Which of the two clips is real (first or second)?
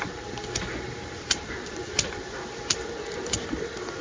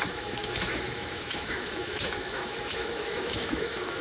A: first